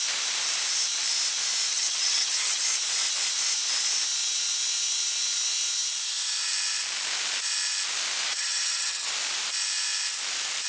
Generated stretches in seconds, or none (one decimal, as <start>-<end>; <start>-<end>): 1.7-2.6; 8.3-9.1